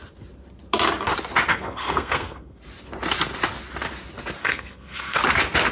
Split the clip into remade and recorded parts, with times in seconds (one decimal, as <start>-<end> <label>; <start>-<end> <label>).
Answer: 0.0-1.5 recorded; 1.5-2.6 remade; 2.6-4.4 recorded; 4.4-5.2 remade; 5.2-5.7 recorded